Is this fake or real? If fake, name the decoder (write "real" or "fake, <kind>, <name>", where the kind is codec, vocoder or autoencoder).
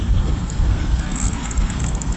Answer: fake, codec, SNAC